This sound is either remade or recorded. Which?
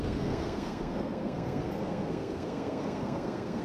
remade